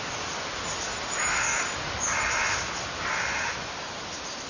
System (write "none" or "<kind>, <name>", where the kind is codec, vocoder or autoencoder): none